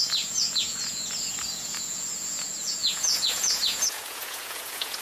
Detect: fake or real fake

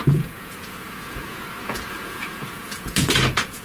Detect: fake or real fake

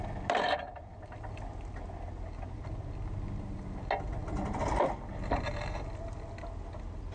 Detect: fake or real real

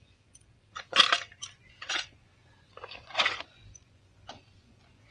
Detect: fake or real fake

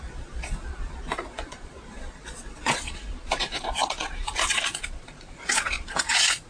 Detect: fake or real fake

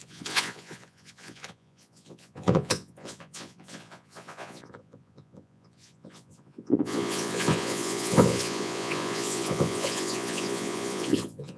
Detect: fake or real fake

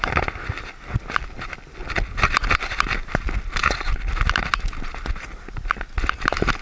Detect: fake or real real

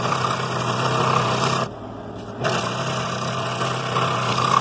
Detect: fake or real real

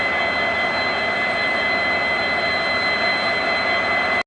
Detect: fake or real real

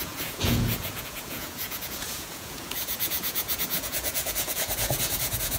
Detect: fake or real fake